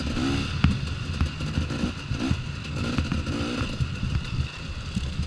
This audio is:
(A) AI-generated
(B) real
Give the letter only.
B